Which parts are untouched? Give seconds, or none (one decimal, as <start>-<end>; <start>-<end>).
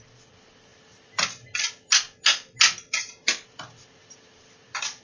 0.0-5.0